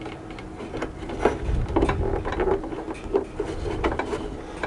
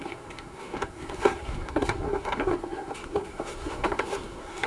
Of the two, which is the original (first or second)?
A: first